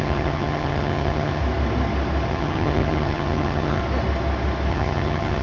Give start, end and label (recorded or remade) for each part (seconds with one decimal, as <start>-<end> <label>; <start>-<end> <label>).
0.0-1.4 remade; 1.4-2.3 recorded; 2.3-3.8 remade; 3.8-4.7 recorded; 4.7-5.4 remade